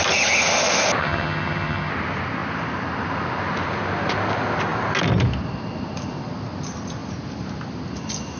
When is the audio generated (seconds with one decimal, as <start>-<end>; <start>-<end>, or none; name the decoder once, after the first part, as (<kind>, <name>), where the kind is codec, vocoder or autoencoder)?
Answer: 1.0-1.9 (vocoder, HiFi-GAN)